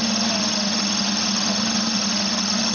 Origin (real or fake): real